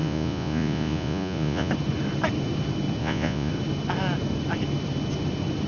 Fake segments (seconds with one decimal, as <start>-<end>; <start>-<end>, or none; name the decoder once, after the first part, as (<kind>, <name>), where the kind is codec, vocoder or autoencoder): 0.0-1.7 (vocoder, Vocos); 3.0-3.5

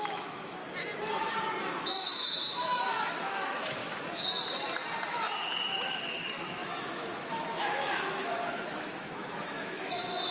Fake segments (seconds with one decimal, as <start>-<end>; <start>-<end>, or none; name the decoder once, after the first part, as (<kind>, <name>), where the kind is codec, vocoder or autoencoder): 0.0-0.6 (autoencoder, DAC-VAE); 1.8-3.8; 5.1-10.3

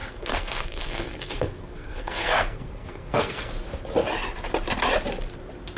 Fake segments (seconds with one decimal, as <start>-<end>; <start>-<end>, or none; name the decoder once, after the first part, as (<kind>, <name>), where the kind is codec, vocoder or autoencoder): 0.0-3.5 (codec, SNAC)

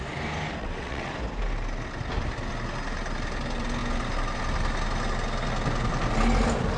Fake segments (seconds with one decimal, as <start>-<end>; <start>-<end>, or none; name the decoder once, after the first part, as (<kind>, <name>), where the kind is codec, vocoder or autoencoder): 0.6-1.1 (vocoder, WaveNeXt)

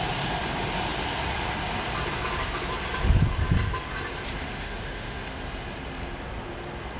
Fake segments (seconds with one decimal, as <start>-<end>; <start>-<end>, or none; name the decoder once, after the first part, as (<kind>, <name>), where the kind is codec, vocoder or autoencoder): 4.5-5.3 (autoencoder, DAC-VAE)

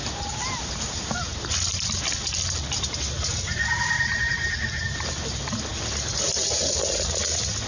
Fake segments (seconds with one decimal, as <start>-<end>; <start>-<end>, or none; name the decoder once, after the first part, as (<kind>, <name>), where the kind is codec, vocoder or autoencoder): none

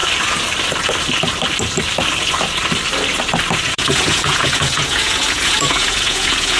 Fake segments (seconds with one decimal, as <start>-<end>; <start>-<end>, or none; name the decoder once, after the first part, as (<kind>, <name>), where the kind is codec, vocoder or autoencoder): 3.7-6.6 (vocoder, Vocos)

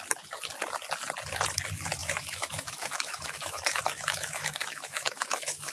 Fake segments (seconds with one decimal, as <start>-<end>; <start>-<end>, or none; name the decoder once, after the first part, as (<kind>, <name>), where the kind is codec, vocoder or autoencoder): 2.0-5.7 (autoencoder, DAC-VAE)